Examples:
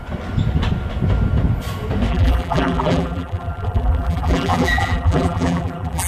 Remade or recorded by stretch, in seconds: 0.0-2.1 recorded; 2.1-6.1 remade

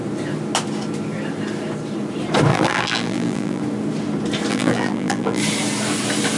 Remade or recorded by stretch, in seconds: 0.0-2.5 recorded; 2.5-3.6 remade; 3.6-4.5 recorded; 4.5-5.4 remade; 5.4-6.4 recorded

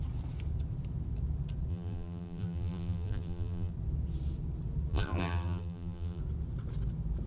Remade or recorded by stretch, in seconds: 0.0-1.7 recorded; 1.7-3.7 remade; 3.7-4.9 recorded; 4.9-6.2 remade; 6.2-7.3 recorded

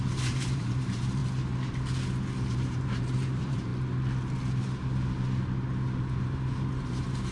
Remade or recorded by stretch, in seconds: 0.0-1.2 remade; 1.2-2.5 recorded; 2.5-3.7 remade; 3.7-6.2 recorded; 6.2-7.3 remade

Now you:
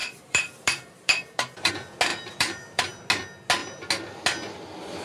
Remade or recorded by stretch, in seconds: 0.0-1.7 remade; 1.7-2.1 recorded; 2.1-2.8 remade; 2.8-5.0 recorded